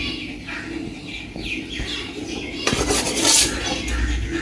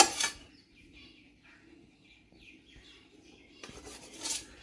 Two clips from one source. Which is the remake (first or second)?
second